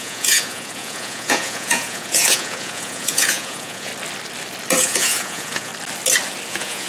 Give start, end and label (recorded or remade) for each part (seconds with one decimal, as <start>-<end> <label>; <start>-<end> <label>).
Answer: 0.0-3.9 remade; 3.9-4.8 recorded; 4.8-5.7 remade; 5.7-6.5 recorded; 6.5-6.9 remade